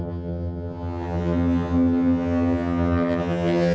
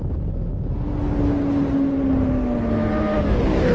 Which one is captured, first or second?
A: second